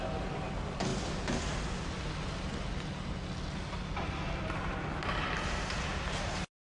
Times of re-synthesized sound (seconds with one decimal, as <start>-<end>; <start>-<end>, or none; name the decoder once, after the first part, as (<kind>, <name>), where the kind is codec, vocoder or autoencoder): none